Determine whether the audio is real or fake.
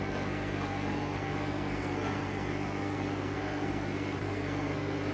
fake